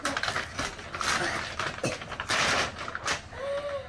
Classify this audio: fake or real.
real